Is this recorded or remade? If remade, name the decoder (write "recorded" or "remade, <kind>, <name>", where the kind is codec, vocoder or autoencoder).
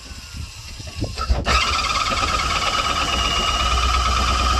recorded